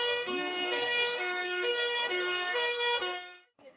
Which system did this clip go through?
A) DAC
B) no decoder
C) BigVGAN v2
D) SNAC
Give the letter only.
D